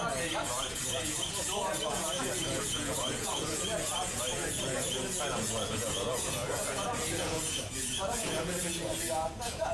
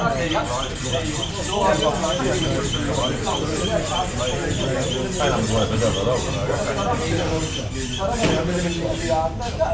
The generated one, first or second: first